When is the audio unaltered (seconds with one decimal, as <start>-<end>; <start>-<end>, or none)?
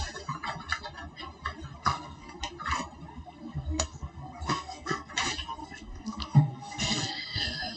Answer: 0.0-1.8; 2.4-3.1; 5.1-5.6